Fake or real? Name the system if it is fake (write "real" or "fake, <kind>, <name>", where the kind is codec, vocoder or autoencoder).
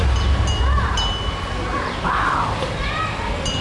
real